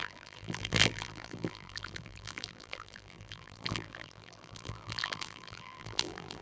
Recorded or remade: remade